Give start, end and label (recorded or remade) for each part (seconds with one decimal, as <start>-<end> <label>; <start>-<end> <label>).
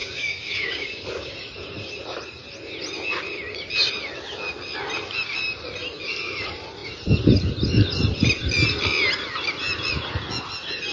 0.0-1.3 remade; 1.3-10.9 recorded